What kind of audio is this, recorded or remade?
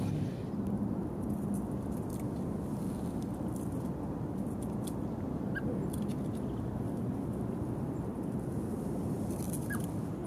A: recorded